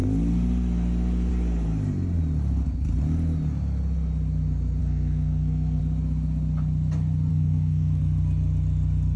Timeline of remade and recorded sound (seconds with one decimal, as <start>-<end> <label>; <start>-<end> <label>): 0.0-4.8 recorded; 4.8-5.8 remade; 5.8-7.3 recorded; 7.3-8.0 remade; 8.0-9.2 recorded